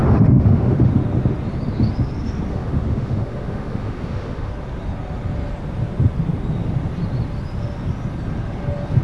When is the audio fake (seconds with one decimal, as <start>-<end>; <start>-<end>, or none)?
0.0-0.9; 2.5-4.5

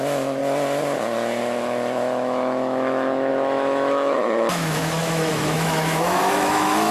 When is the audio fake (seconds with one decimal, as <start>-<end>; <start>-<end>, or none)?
0.0-0.4; 1.4-6.9

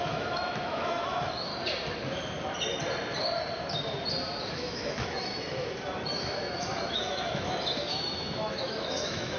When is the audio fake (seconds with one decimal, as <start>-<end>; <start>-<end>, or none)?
0.0-1.5; 4.5-9.4

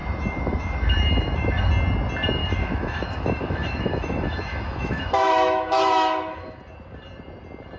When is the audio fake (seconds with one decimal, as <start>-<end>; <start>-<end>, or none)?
0.0-1.7; 2.4-6.6